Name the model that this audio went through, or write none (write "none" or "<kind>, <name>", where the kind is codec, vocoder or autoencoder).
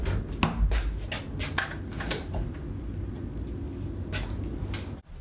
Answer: none